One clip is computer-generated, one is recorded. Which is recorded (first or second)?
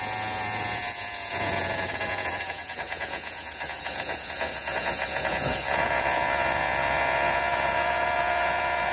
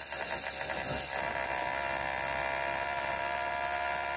second